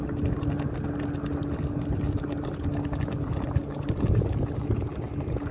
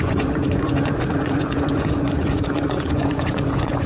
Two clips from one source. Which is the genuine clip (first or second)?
first